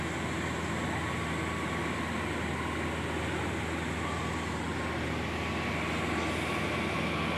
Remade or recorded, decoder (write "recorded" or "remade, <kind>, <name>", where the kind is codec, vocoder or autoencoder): recorded